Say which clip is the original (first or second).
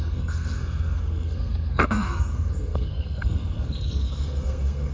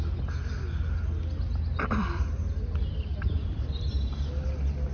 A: second